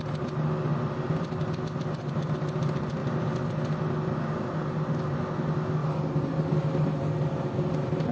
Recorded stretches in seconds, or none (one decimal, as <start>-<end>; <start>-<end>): 0.0-8.1